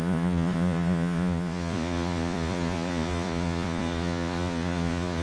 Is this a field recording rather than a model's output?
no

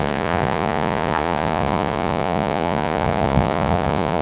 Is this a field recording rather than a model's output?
no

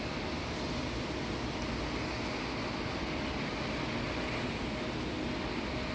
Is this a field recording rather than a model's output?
yes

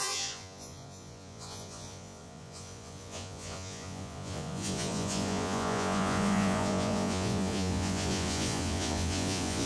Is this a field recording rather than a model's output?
no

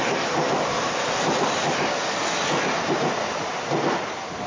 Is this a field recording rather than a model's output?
yes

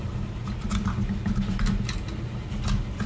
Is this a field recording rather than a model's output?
yes